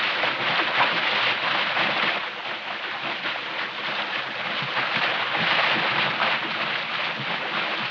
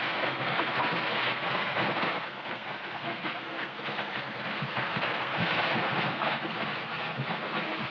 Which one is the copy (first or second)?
second